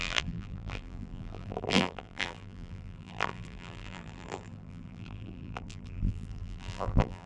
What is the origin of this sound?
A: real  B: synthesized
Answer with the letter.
B